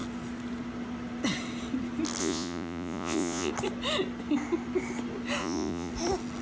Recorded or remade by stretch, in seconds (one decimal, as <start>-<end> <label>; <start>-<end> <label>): 0.0-2.2 recorded; 2.2-3.5 remade; 3.5-5.4 recorded; 5.4-5.9 remade; 5.9-6.4 recorded